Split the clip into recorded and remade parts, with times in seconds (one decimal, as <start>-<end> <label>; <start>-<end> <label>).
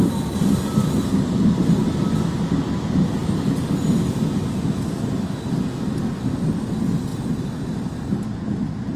0.0-2.6 remade; 2.6-7.1 recorded; 7.1-8.2 remade; 8.2-9.0 recorded